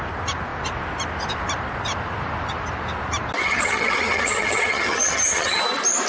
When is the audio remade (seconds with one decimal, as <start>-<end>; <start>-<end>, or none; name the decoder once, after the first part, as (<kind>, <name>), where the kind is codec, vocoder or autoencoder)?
3.4-5.6 (vocoder, HiFi-GAN)